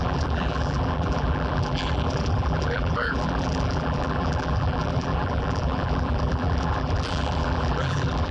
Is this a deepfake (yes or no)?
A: yes